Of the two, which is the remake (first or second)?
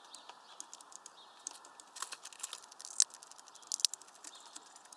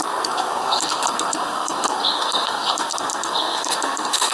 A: second